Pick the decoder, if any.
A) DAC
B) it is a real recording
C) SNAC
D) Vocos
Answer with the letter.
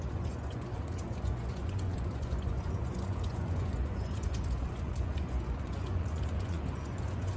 D